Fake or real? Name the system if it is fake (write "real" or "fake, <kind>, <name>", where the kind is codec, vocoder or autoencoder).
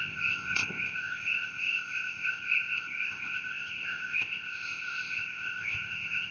fake, codec, ZipCodec